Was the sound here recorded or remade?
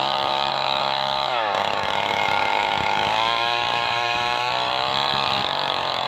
remade